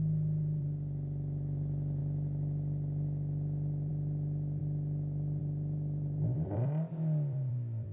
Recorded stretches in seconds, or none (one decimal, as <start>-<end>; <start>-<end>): 2.0-3.9; 4.6-5.4